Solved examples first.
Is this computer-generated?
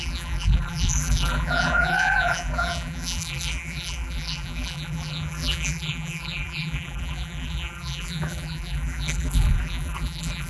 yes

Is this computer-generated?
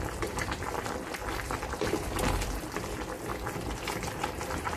yes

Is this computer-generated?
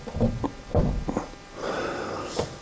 no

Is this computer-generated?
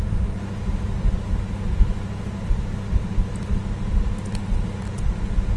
no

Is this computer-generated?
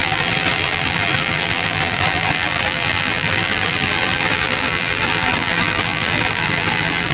yes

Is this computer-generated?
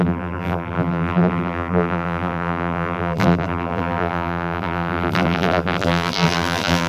yes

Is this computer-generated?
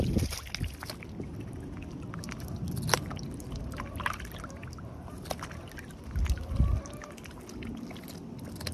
no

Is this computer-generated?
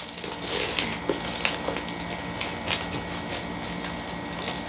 no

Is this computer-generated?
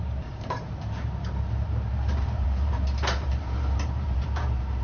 yes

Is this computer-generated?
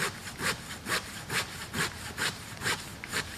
yes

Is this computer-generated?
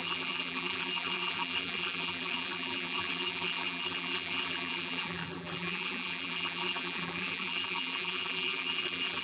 yes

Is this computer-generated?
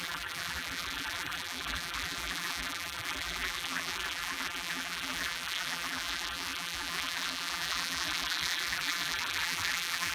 yes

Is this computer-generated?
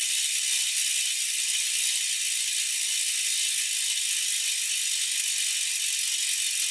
no